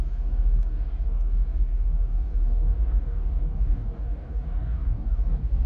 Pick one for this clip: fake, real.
fake